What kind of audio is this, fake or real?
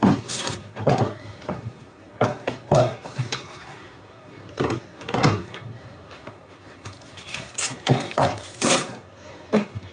fake